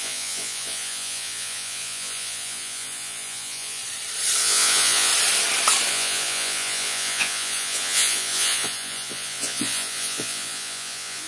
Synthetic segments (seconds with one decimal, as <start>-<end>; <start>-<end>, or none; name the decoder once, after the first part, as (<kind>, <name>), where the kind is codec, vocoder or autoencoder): 0.0-3.8 (vocoder, Vocos); 4.4-5.1; 5.9-11.3